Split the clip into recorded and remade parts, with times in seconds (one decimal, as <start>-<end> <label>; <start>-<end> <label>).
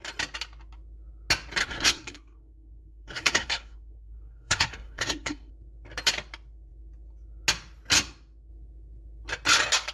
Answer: 0.0-1.6 recorded; 1.6-5.5 remade; 5.5-9.9 recorded